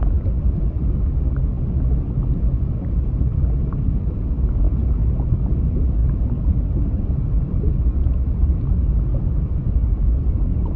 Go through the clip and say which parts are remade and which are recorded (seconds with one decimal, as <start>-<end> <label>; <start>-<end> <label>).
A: 0.0-6.0 recorded; 6.0-9.5 remade; 9.5-10.8 recorded